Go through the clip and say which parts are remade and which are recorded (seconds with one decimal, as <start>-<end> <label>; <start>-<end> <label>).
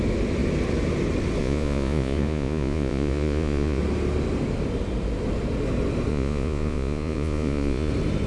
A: 0.0-1.4 recorded; 1.4-3.8 remade; 3.8-6.1 recorded; 6.1-7.9 remade; 7.9-8.3 recorded